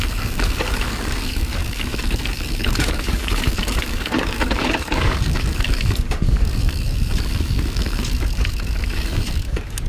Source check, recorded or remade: remade